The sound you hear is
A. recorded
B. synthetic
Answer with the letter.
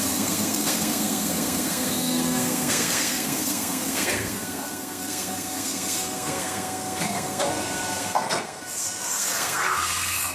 B